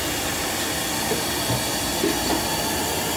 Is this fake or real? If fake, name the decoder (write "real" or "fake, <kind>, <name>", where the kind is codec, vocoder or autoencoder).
real